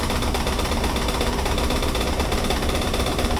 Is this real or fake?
fake